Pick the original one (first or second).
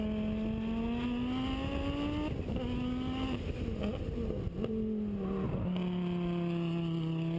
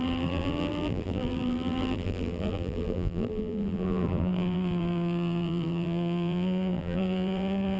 first